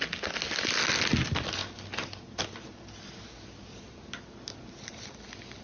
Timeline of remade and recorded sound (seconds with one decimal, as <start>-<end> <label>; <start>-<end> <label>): 0.0-5.6 recorded